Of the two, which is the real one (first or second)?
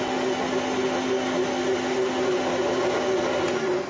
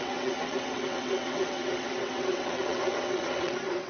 first